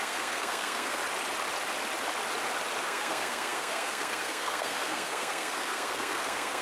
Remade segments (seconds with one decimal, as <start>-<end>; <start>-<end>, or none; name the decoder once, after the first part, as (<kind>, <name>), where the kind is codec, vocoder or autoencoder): 0.0-1.0 (codec, SNAC); 2.8-6.6